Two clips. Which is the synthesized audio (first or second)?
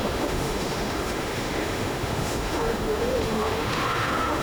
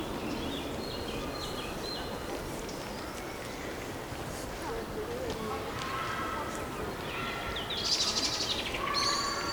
first